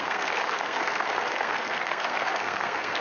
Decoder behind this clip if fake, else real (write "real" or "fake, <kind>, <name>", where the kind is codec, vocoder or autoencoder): fake, codec, SNAC